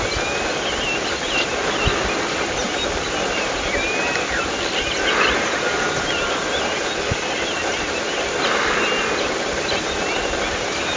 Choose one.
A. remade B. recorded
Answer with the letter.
B